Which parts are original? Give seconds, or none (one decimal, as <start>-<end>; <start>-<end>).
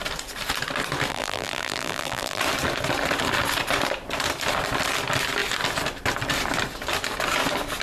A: 0.0-1.1; 2.4-7.8